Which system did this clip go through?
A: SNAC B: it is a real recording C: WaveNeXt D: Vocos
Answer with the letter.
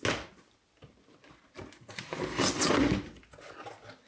B